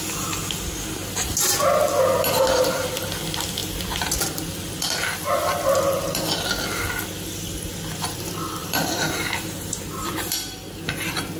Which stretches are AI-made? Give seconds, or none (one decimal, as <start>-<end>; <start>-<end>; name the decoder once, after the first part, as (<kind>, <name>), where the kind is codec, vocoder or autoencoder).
8.6-10.1 (vocoder, BigVGAN v2)